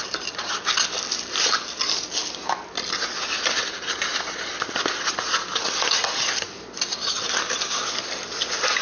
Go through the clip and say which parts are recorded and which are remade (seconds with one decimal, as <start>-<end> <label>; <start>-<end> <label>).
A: 0.0-8.8 recorded